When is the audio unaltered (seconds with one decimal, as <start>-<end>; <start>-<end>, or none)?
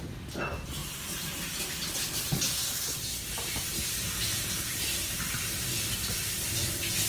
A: 0.0-0.8; 2.7-4.3; 4.8-7.1